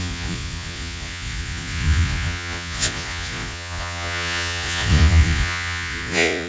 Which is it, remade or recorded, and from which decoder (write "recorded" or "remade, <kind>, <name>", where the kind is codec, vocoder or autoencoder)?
remade, vocoder, Vocos